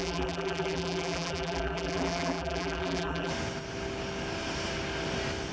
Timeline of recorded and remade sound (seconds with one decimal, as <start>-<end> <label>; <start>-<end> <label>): 0.0-3.3 remade; 3.3-5.5 recorded